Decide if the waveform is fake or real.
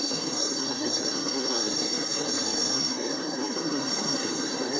fake